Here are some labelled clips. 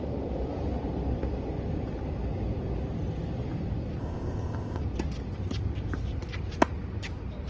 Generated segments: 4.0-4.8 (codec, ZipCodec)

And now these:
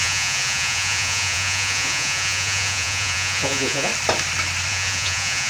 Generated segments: 0.0-3.9 (vocoder, Vocos); 4.7-5.5

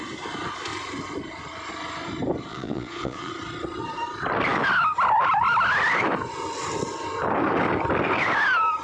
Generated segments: 2.5-3.3 (vocoder, Vocos)

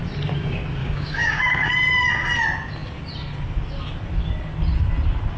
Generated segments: 0.8-1.7 (codec, DAC)

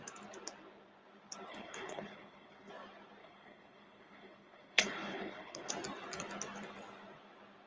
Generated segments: 1.5-2.7 (codec, HILCodec); 3.2-5.7

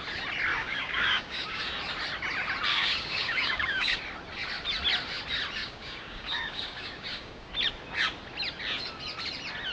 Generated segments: 0.5-1.6 (codec, DAC); 2.7-4.0; 5.6-7.5

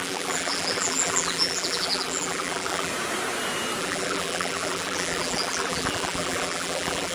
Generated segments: 0.0-2.9 (vocoder, BigVGAN v2); 3.8-7.1